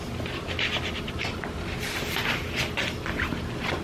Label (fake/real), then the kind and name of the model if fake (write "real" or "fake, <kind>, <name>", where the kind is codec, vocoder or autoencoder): fake, vocoder, BigVGAN v2